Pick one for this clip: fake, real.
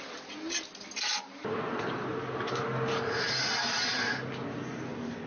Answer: real